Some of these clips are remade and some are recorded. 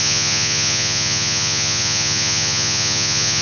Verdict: remade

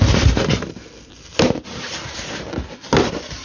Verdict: recorded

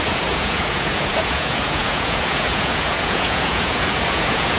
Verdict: remade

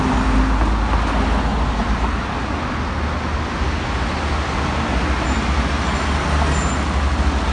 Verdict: recorded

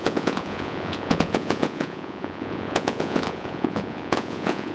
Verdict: remade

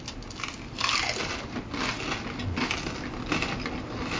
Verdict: recorded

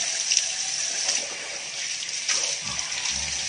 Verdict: recorded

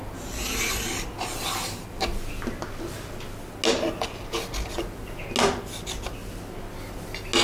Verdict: recorded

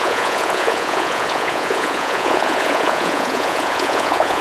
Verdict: remade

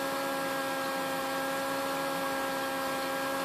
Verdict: recorded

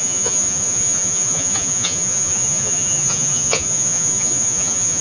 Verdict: remade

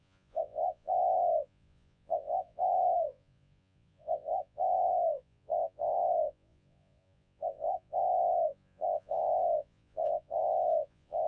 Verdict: remade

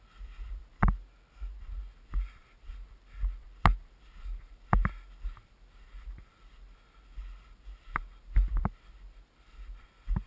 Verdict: recorded